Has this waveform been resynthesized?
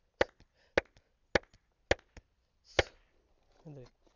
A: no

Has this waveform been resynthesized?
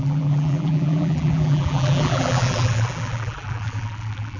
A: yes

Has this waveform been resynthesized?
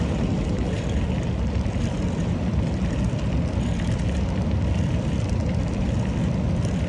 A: no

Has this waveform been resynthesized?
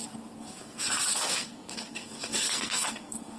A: yes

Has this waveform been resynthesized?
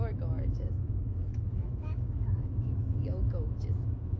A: yes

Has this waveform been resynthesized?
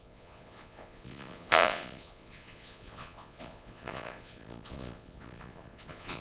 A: yes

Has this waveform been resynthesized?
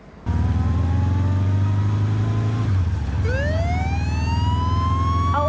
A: no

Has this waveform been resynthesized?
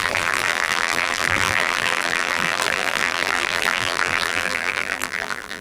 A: yes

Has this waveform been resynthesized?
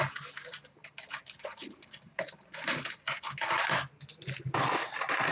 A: no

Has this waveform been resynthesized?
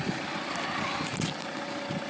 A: no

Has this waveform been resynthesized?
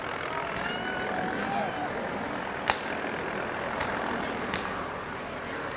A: no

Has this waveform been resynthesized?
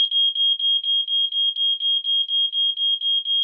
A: no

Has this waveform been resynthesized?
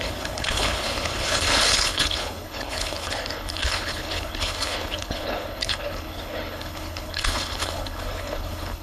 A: yes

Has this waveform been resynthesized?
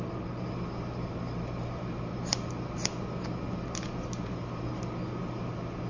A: no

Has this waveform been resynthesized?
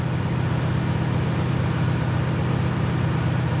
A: no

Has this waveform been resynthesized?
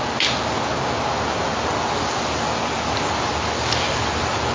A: no